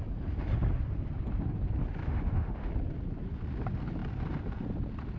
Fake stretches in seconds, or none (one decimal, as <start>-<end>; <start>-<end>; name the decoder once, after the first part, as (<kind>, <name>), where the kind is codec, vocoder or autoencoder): 2.0-2.7 (autoencoder, DAC-VAE)